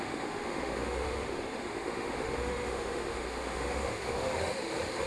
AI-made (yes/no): yes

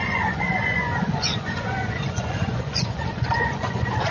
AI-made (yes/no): yes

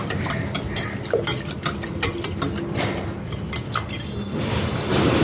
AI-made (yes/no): no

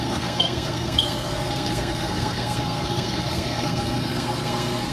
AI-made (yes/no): yes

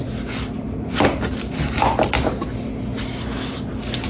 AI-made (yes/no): no